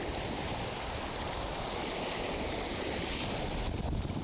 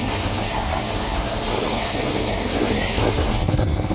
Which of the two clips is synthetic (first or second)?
second